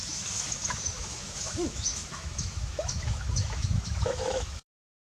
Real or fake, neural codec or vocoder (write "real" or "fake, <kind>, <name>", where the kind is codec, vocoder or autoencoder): fake, autoencoder, DAC-VAE